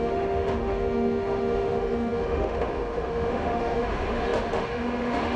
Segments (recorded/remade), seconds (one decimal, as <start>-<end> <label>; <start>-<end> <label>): 0.0-5.4 remade